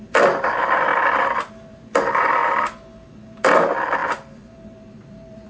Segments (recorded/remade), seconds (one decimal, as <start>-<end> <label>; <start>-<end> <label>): 0.0-2.4 remade; 2.4-3.4 recorded; 3.4-5.5 remade